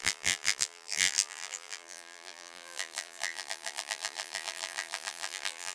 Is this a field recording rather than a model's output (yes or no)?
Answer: no